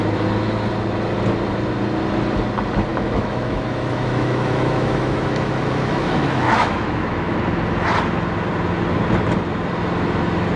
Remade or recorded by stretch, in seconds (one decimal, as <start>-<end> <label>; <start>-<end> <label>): 0.0-2.9 recorded; 2.9-7.4 remade; 7.4-10.6 recorded